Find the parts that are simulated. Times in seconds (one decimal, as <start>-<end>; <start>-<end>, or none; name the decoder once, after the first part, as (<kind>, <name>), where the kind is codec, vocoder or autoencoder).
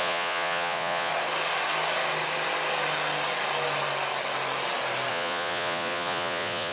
0.0-1.1 (vocoder, Vocos); 5.1-6.7